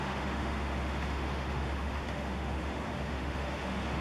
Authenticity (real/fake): fake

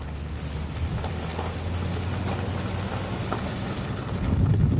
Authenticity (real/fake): real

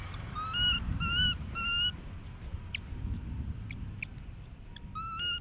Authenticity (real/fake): real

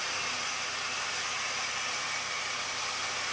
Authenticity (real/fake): real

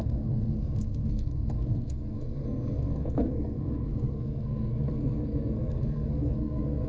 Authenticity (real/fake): fake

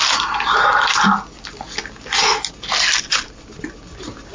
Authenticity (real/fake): real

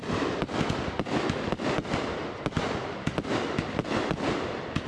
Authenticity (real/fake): real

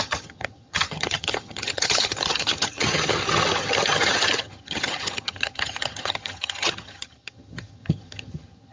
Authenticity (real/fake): fake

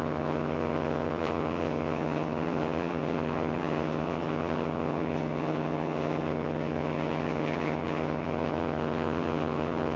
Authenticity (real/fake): fake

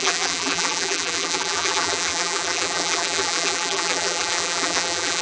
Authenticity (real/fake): fake